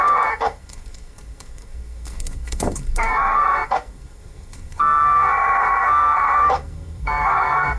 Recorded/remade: remade